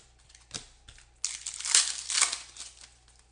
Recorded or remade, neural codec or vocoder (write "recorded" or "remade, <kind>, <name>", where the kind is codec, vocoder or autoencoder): recorded